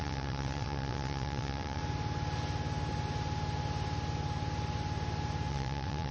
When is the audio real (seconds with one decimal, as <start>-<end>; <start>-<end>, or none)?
1.8-5.5